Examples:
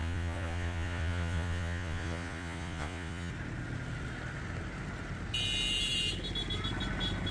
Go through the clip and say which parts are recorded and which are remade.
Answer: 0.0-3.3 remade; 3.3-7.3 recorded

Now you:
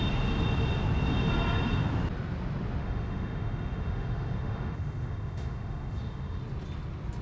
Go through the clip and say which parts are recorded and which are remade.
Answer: 0.0-2.8 recorded; 2.8-6.4 remade; 6.4-7.2 recorded

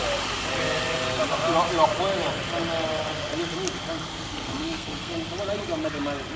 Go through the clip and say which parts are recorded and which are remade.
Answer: 0.0-4.1 recorded; 4.1-5.1 remade; 5.1-6.4 recorded

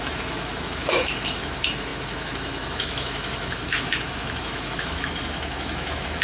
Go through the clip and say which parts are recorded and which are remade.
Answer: 0.0-6.2 remade

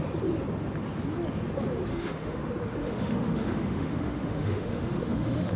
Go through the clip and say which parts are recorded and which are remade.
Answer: 0.0-1.9 recorded; 1.9-2.4 remade; 2.4-2.8 recorded; 2.8-5.6 remade

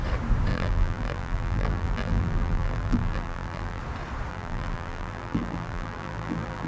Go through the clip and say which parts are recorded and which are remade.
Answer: 0.0-0.5 recorded; 0.5-3.8 remade; 3.8-4.3 recorded; 4.3-6.7 remade

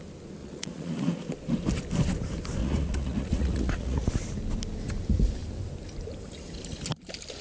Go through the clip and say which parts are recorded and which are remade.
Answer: 0.0-0.4 recorded; 0.4-1.3 remade; 1.3-2.6 recorded; 2.6-4.1 remade; 4.1-7.4 recorded

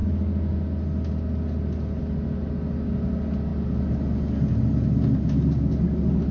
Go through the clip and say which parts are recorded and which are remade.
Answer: 0.0-6.3 recorded